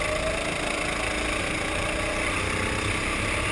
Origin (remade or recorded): recorded